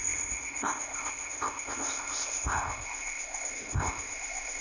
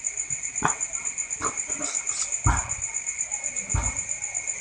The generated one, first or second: first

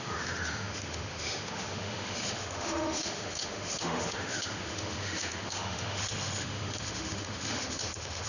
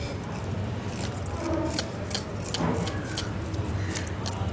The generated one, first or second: first